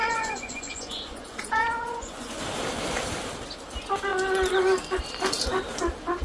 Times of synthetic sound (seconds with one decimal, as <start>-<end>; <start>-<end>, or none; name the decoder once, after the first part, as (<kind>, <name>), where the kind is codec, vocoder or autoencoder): 0.0-2.4 (vocoder, Vocos)